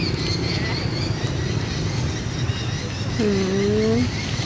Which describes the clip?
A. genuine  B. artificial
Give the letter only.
A